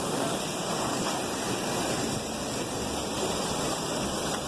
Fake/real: real